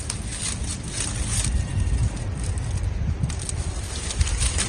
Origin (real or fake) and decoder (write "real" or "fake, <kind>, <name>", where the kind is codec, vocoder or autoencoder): real